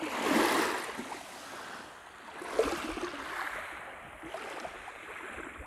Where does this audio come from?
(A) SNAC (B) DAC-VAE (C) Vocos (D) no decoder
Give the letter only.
D